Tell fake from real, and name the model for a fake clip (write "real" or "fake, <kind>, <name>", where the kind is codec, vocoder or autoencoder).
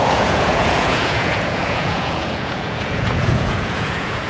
fake, vocoder, Vocos